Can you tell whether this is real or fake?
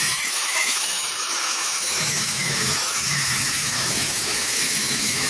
fake